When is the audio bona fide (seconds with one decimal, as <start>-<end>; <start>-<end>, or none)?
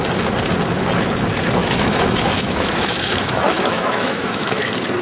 0.0-1.6; 4.6-5.0